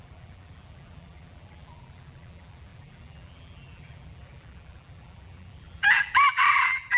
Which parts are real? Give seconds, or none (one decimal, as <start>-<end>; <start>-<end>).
none

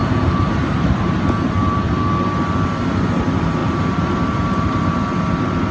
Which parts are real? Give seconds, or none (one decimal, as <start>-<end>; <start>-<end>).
1.1-3.6; 4.9-5.7

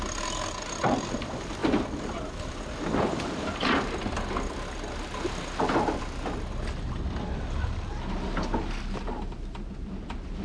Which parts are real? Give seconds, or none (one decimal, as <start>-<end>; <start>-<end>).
0.0-10.4

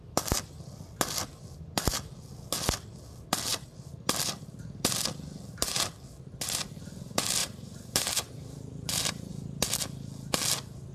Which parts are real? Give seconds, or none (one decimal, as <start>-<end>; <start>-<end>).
0.0-7.4; 9.3-10.9

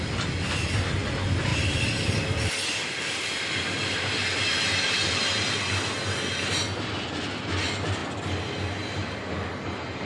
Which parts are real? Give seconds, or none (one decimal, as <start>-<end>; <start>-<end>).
0.0-1.5; 3.5-10.1

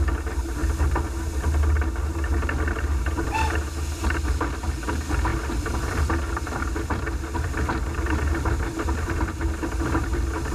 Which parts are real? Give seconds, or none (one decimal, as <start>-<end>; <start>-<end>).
0.0-5.3

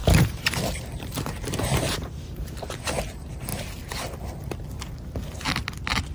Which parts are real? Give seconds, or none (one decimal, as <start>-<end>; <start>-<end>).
3.5-6.1